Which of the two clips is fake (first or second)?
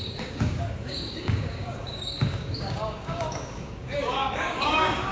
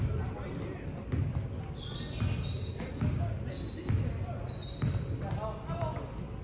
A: first